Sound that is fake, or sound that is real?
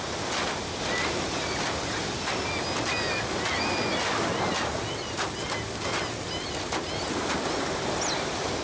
real